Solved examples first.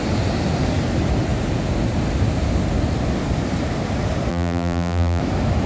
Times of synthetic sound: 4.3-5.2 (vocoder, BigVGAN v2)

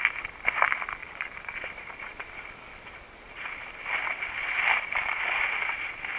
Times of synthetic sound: 1.0-2.3 (vocoder, BigVGAN v2)

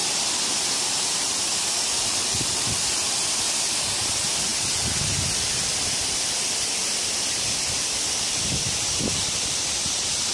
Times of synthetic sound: 0.0-4.5 (vocoder, BigVGAN v2); 5.3-6.8; 8.3-10.3

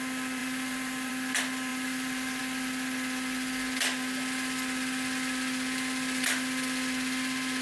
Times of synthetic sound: 0.4-1.1 (vocoder, BigVGAN v2); 1.7-2.4

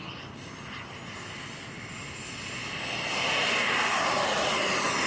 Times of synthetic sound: none

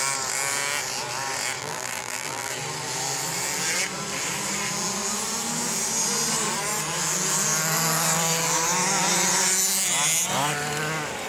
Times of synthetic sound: 1.6-2.5 (vocoder, BigVGAN v2)